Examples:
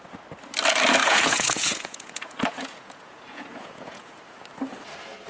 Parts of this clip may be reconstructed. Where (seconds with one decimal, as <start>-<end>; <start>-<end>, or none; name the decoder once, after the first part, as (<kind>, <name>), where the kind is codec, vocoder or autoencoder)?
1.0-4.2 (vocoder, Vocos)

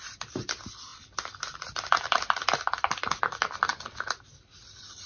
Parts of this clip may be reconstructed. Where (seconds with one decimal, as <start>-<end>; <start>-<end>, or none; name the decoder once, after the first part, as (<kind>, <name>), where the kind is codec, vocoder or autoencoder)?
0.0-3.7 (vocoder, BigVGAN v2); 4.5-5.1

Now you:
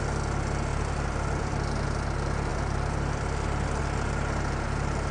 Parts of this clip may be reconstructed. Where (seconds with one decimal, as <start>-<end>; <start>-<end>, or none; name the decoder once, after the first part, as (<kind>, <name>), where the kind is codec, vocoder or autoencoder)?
0.7-1.5 (vocoder, BigVGAN v2); 2.5-3.8

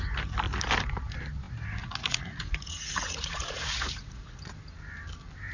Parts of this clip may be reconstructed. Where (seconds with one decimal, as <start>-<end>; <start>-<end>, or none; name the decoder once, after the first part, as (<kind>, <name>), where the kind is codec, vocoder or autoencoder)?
1.8-4.4 (vocoder, Vocos)